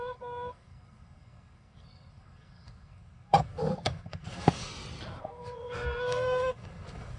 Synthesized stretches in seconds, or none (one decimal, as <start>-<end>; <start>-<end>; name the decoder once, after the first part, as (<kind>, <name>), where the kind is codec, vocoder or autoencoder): 0.0-4.7 (codec, SNAC); 5.2-7.2